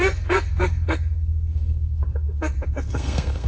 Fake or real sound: fake